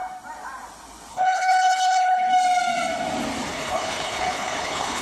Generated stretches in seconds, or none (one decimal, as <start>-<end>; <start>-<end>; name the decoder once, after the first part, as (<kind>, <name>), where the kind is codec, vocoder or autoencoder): 1.1-2.3 (codec, HILCodec); 3.5-5.0